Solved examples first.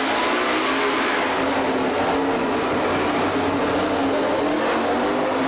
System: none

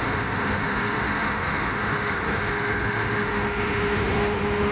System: autoencoder, DAC-VAE